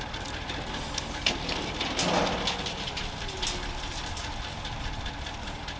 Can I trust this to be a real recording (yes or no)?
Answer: yes